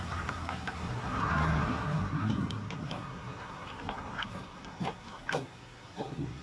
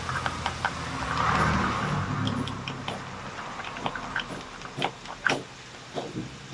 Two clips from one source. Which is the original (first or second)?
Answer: second